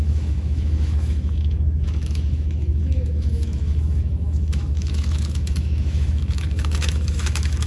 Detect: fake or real fake